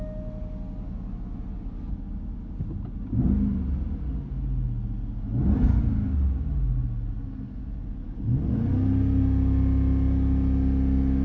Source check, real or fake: real